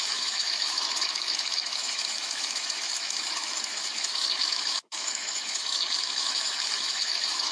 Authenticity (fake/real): fake